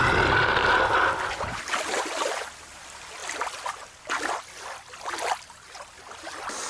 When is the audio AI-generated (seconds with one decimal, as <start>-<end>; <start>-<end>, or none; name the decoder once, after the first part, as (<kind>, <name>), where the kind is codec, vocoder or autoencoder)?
none